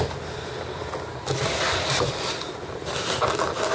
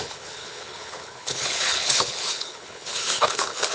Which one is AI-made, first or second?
second